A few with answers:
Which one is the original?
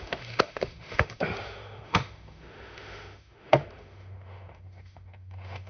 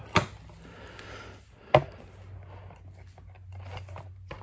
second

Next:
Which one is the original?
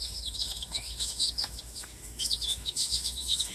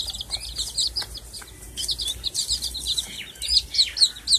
second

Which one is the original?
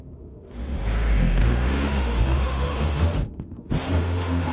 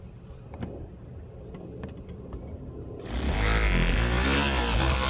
second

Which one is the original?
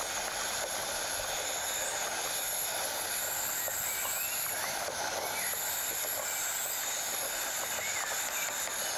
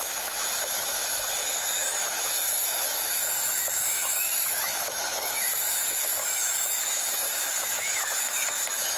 first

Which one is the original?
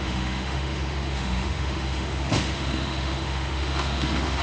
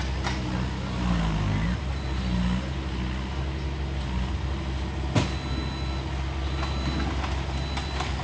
second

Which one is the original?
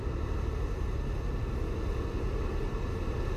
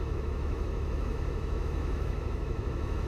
first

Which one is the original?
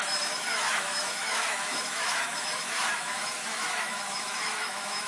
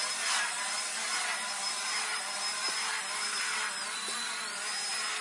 second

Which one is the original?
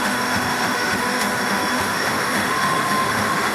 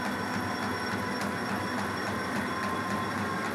second